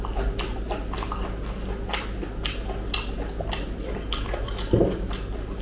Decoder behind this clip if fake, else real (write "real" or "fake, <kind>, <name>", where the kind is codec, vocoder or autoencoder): real